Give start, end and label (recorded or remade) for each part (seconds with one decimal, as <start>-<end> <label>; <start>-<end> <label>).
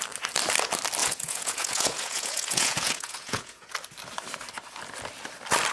0.0-1.0 recorded; 1.0-3.7 remade; 3.7-5.7 recorded